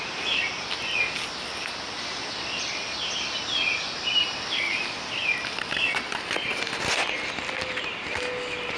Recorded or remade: recorded